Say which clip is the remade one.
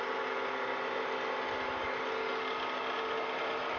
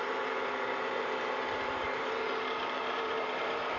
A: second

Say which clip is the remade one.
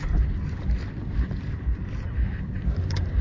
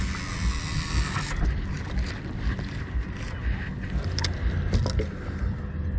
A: first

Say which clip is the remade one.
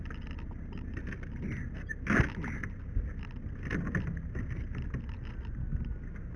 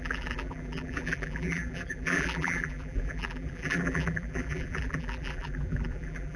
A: second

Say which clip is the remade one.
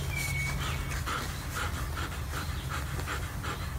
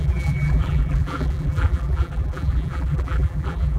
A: second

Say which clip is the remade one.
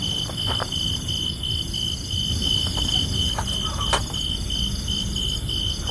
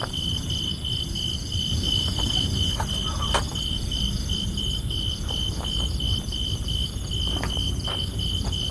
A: second